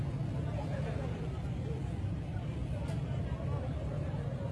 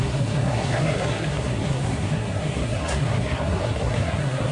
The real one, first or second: first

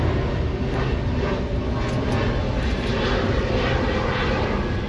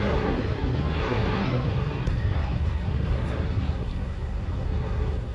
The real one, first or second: first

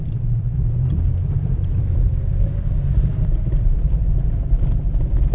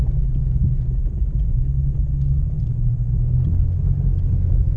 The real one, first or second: second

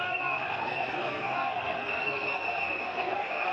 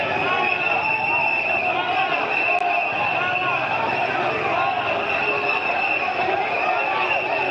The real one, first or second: second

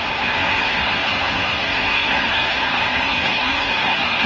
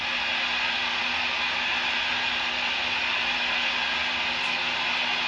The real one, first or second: second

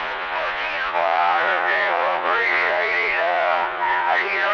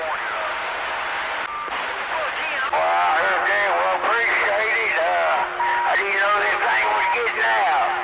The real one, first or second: second